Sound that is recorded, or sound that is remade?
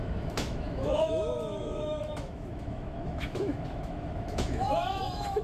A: remade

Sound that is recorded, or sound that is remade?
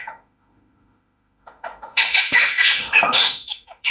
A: remade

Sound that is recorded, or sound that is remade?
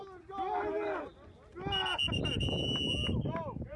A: recorded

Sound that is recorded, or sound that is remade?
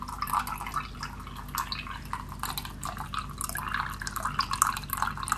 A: recorded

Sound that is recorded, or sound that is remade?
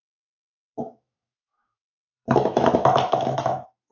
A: remade